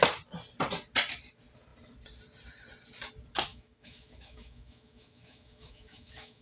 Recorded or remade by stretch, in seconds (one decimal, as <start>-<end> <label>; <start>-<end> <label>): 0.0-3.5 recorded; 3.5-6.4 remade